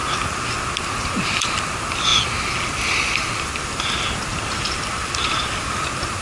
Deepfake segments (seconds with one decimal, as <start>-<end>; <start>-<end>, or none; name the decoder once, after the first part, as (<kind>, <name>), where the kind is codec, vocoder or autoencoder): none

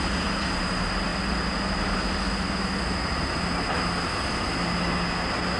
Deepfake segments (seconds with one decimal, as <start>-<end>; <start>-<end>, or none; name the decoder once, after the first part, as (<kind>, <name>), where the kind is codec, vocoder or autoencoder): none

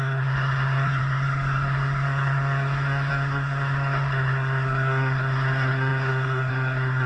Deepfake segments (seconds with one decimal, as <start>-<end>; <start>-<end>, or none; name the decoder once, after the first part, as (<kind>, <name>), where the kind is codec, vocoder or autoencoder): 0.0-7.1 (codec, SNAC)

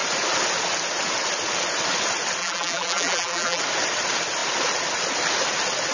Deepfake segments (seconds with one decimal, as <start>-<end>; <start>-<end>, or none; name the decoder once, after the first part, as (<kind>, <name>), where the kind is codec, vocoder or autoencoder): 2.4-3.6 (vocoder, BigVGAN v2)

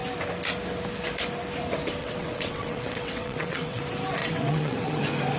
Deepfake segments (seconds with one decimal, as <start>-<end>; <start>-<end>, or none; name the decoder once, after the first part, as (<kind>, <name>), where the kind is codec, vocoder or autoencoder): 2.0-3.8 (vocoder, WaveNeXt); 4.2-5.0

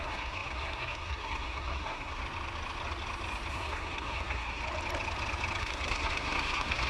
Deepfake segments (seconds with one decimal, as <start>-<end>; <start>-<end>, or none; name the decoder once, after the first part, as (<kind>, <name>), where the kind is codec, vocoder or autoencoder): 0.0-2.2 (codec, SNAC); 3.5-4.6; 5.6-6.9

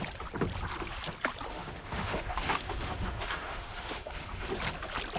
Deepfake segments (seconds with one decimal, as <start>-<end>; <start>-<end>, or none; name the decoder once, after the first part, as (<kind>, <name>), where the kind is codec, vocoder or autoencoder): 1.5-4.5 (autoencoder, DAC-VAE)

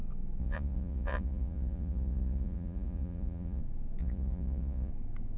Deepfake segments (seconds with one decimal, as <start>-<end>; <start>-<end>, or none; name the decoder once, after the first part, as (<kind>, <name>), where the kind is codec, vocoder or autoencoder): 0.4-3.6 (vocoder, Vocos); 4.0-4.9